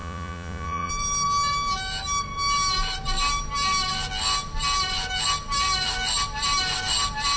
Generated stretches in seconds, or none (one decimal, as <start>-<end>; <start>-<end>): 0.0-0.9